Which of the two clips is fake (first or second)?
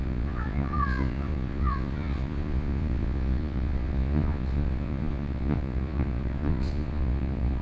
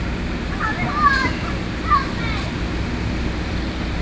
first